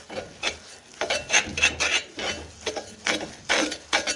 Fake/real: real